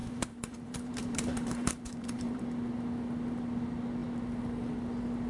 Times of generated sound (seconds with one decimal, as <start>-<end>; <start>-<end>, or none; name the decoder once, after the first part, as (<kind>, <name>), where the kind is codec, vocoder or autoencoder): 0.0-2.4 (vocoder, BigVGAN v2)

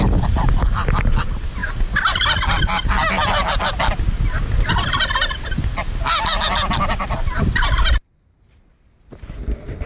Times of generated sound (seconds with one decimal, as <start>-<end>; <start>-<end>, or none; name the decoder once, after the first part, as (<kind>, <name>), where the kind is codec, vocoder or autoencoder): none

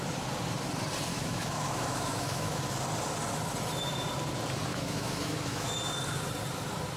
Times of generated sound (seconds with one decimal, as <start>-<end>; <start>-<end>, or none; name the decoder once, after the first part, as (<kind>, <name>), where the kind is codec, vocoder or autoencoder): 1.1-2.6 (autoencoder, DAC-VAE); 4.7-5.8

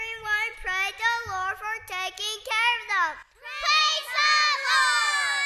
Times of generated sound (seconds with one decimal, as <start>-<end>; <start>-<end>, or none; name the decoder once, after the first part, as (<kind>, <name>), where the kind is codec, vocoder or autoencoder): none

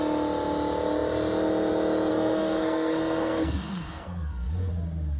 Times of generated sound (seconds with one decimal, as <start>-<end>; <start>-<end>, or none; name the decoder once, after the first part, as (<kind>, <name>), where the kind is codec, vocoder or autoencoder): 2.1-4.7 (codec, SNAC)